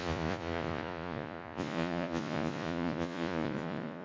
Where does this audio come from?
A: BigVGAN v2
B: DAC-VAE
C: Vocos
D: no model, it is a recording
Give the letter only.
C